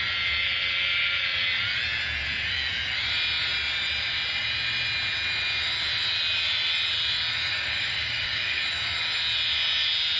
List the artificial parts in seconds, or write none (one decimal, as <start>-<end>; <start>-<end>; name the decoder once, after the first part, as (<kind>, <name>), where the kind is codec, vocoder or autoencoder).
7.5-8.6 (codec, DAC)